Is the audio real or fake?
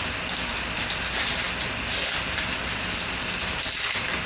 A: real